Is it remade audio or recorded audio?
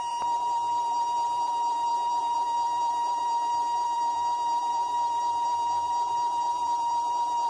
remade